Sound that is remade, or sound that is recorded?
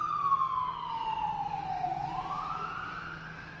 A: recorded